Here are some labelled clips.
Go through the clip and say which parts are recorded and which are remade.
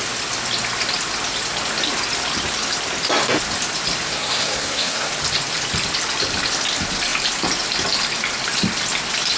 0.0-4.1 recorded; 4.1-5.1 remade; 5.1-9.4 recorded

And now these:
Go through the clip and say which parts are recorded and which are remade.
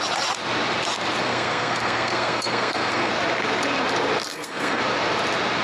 0.0-1.2 recorded; 1.2-3.1 remade; 3.1-4.3 recorded; 4.3-4.8 remade; 4.8-5.6 recorded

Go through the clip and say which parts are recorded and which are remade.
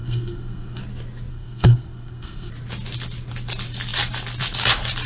0.0-0.8 remade; 0.8-1.3 recorded; 1.3-2.5 remade; 2.5-5.1 recorded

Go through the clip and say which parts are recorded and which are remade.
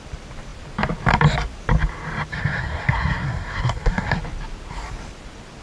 0.0-2.3 recorded; 2.3-4.2 remade; 4.2-5.6 recorded